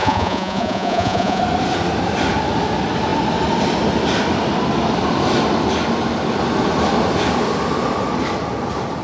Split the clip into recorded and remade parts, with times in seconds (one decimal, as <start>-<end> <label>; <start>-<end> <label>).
0.0-1.4 remade; 1.4-9.0 recorded